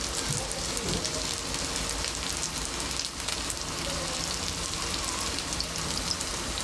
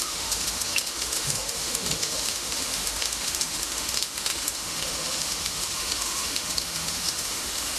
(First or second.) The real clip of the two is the first